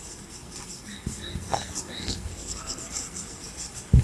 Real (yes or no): no